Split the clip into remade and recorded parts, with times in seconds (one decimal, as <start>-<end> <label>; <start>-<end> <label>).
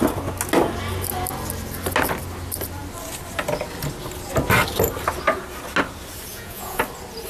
0.0-6.3 recorded; 6.3-6.8 remade; 6.8-7.3 recorded